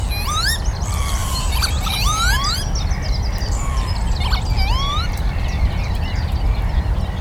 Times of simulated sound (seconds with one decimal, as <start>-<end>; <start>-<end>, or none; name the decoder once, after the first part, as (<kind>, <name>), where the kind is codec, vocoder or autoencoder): 1.2-2.6 (vocoder, BigVGAN v2); 4.9-6.0